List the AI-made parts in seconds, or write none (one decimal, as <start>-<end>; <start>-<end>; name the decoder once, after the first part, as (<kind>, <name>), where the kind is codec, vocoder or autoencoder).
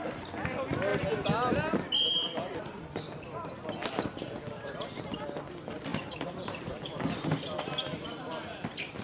5.9-7.7 (vocoder, BigVGAN v2)